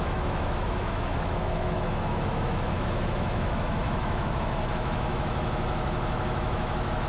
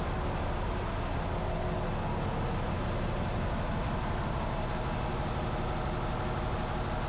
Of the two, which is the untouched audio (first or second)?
second